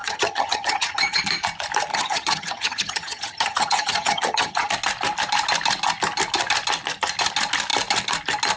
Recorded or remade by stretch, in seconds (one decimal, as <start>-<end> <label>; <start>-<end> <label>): 0.0-1.2 remade; 1.2-1.9 recorded; 1.9-4.7 remade; 4.7-8.6 recorded